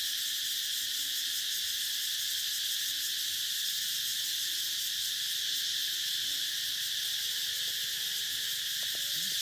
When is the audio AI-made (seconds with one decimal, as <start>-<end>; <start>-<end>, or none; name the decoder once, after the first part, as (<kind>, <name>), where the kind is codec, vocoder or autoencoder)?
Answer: none